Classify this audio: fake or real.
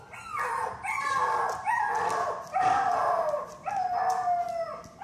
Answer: real